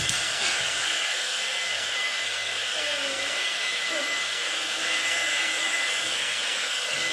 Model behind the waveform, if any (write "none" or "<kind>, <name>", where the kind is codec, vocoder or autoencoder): codec, SNAC